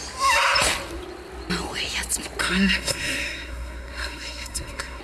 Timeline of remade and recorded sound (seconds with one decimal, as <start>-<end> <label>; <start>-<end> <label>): 0.0-2.4 recorded; 2.4-5.0 remade